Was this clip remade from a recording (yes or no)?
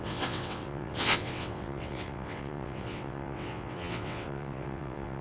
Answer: yes